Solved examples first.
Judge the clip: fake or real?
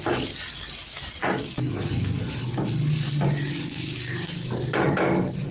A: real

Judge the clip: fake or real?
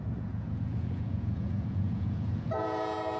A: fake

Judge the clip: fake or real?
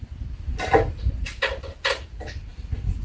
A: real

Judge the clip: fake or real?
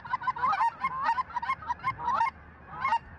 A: real